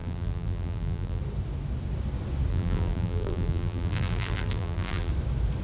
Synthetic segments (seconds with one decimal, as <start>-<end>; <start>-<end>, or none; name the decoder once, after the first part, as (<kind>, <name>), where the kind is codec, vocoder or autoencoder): 0.0-1.2 (vocoder, BigVGAN v2); 2.5-5.1